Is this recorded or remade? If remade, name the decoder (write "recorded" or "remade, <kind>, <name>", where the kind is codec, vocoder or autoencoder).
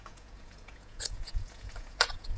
remade, vocoder, Vocos